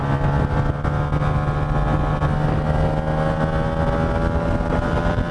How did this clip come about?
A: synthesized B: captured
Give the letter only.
B